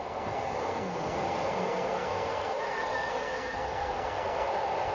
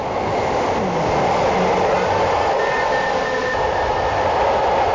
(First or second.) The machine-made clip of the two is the first